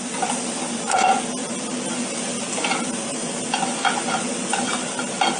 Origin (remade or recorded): recorded